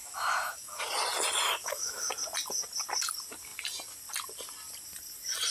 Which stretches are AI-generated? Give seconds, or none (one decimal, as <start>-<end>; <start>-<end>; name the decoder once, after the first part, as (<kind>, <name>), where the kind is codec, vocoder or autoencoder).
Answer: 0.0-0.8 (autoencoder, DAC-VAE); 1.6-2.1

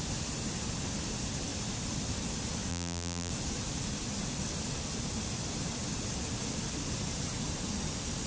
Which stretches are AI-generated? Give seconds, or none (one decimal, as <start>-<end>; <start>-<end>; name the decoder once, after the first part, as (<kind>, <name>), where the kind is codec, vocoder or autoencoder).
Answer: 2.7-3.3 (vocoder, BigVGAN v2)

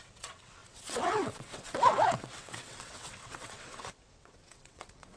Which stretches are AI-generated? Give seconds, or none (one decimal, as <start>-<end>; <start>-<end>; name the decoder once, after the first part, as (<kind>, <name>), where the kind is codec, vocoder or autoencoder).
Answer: 0.0-5.2 (vocoder, WaveNeXt)

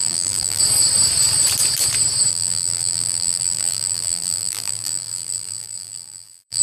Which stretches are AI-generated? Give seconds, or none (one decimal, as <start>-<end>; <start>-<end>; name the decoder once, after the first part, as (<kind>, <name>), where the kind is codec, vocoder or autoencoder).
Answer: 0.0-0.6 (vocoder, BigVGAN v2); 2.3-6.6